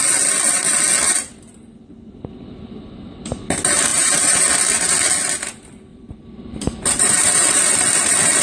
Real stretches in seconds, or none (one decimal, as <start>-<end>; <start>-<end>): 0.0-3.9; 4.4-5.9; 7.7-8.4